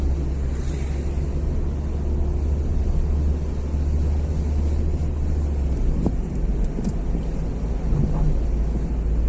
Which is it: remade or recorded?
recorded